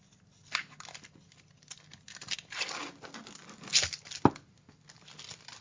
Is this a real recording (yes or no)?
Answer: yes